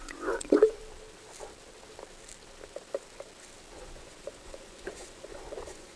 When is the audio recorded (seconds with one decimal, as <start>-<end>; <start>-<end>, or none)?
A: 0.8-3.7